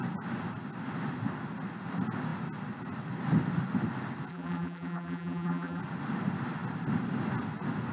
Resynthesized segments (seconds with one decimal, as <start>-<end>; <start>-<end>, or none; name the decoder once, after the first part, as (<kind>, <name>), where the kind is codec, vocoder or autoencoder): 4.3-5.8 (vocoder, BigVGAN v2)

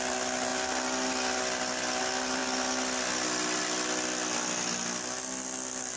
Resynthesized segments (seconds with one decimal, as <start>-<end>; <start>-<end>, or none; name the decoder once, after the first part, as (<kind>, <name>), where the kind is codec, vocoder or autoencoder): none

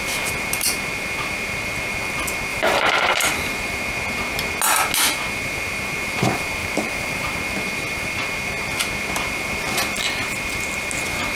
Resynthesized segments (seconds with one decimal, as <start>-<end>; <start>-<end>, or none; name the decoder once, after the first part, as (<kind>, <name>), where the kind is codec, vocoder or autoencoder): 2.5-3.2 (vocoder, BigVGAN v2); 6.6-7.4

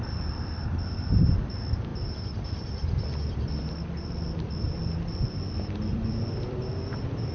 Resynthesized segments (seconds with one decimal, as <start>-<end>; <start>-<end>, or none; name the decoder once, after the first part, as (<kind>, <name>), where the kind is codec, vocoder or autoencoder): 1.9-3.5 (vocoder, BigVGAN v2); 5.9-6.7